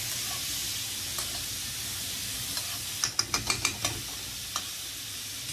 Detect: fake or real real